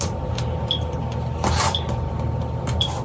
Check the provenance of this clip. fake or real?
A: real